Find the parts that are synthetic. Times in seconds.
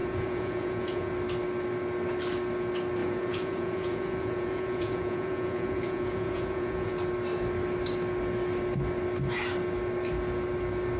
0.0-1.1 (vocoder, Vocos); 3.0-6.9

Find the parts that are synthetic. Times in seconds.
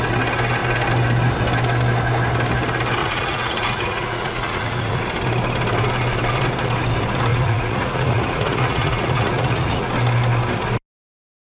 3.0-5.0 (vocoder, Vocos); 7.3-9.9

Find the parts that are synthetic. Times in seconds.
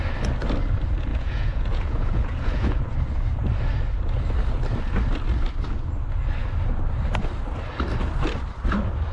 1.1-2.9 (vocoder, Vocos)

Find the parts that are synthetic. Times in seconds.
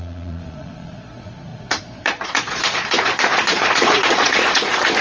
0.0-5.0 (vocoder, Vocos)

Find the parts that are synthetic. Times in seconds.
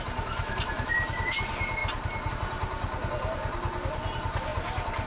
none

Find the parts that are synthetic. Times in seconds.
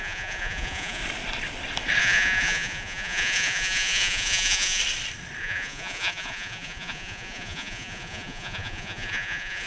0.0-1.0 (vocoder, Vocos); 2.0-4.8; 5.4-9.7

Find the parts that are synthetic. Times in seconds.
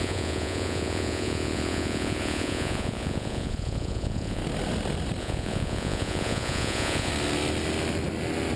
0.0-4.4 (vocoder, Vocos); 5.2-7.1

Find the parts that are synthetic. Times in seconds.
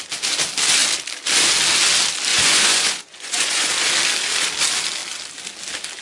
2.3-3.7 (vocoder, Vocos)